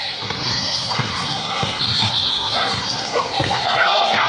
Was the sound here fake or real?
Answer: fake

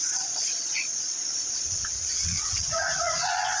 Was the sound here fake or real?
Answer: fake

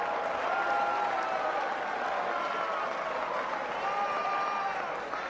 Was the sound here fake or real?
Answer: real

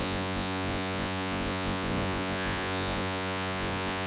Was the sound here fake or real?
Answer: fake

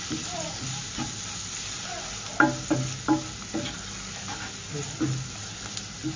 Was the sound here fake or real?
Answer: real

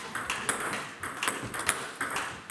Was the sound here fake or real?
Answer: real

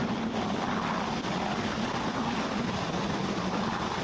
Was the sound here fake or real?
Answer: real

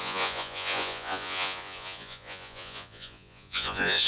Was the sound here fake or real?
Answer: fake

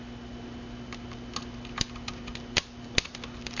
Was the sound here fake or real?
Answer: real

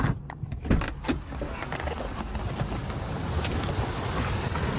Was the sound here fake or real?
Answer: real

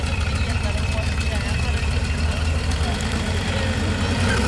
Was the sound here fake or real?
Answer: real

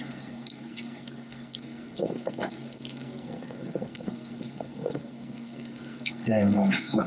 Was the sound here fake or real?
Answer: fake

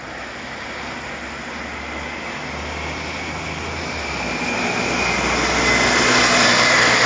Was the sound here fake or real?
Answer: real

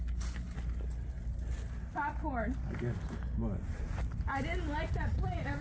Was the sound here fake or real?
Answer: real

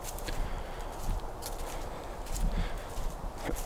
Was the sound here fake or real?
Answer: real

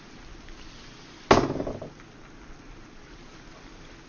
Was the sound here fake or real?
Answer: real